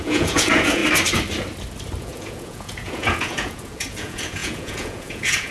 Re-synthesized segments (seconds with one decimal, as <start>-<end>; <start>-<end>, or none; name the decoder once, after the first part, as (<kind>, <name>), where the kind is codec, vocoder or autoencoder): 0.0-0.8 (vocoder, Vocos); 2.0-5.5